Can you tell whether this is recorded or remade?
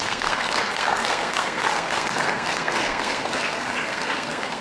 remade